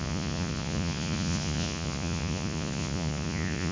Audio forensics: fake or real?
fake